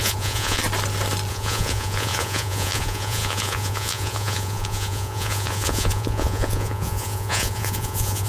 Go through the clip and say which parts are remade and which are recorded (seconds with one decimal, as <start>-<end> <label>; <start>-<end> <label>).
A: 0.0-0.6 remade; 0.6-1.3 recorded; 1.3-8.3 remade